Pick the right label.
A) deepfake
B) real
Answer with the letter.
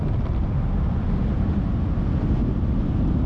B